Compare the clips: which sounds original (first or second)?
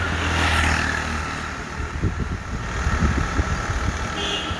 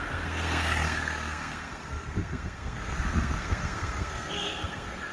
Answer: first